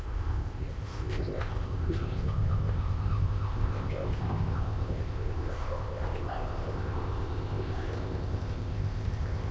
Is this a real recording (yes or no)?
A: no